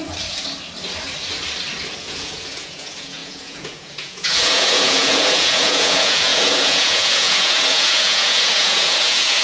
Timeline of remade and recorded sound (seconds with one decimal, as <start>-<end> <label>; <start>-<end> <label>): 0.0-2.0 recorded; 2.0-9.4 remade